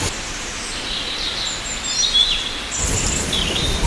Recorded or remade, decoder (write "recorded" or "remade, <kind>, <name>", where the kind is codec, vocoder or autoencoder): recorded